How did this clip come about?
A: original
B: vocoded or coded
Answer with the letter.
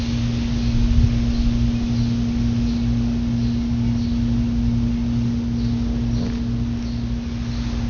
A